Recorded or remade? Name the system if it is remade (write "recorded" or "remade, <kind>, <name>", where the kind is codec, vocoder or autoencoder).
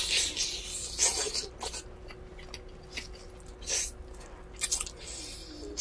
recorded